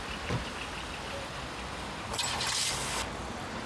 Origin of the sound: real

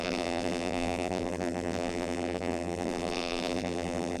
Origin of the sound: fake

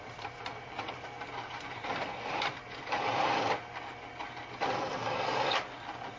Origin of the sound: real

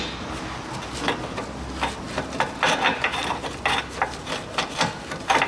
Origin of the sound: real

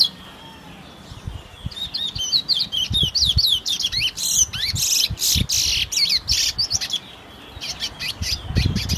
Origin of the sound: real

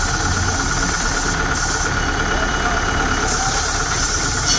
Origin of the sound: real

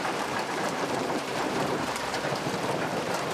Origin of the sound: fake